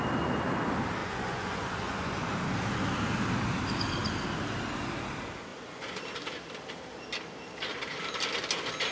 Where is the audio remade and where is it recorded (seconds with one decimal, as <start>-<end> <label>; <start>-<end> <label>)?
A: 0.0-1.0 recorded; 1.0-2.3 remade; 2.3-5.5 recorded; 5.5-6.0 remade; 6.0-8.9 recorded